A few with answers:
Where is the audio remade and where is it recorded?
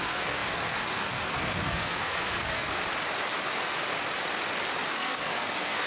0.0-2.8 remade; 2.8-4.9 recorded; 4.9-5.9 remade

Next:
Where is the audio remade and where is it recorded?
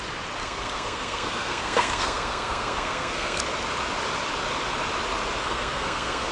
0.0-0.4 recorded; 0.4-3.4 remade; 3.4-5.4 recorded; 5.4-6.3 remade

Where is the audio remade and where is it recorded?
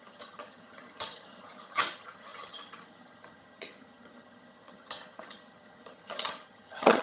0.0-7.0 remade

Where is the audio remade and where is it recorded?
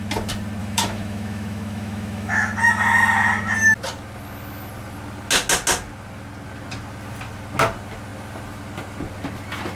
0.0-0.6 recorded; 0.6-2.3 remade; 2.3-9.8 recorded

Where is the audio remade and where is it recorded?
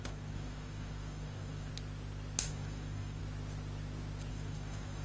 0.0-1.7 remade; 1.7-2.4 recorded; 2.4-3.2 remade; 3.2-4.3 recorded; 4.3-5.0 remade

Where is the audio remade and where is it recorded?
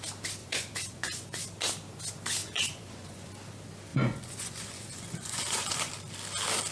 0.0-0.4 recorded; 0.4-1.4 remade; 1.4-2.4 recorded; 2.4-3.3 remade; 3.3-3.9 recorded; 3.9-5.9 remade; 5.9-6.7 recorded